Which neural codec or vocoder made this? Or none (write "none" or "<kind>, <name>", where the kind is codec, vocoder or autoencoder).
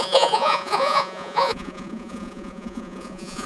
vocoder, Vocos